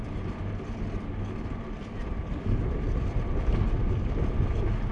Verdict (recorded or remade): recorded